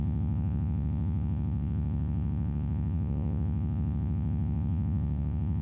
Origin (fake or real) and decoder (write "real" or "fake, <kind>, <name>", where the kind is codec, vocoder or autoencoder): fake, vocoder, Vocos